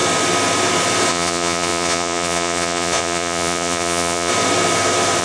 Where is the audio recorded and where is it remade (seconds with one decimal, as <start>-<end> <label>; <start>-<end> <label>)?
0.0-1.1 recorded; 1.1-4.3 remade; 4.3-5.2 recorded